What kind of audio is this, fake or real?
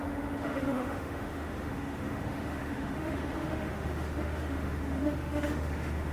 fake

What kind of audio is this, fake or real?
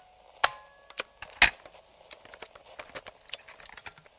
real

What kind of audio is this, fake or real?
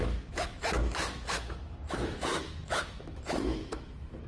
fake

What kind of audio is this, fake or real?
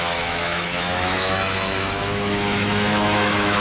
fake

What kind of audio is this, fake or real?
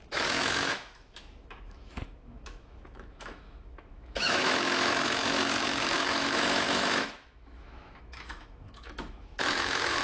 fake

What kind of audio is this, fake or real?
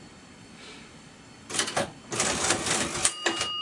real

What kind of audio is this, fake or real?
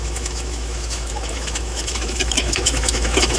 fake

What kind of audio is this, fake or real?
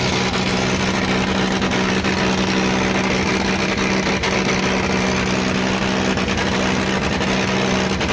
real